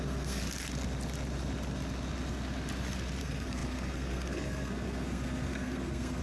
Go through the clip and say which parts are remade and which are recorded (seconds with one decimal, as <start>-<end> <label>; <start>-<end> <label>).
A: 0.0-0.4 remade; 0.4-3.2 recorded; 3.2-6.2 remade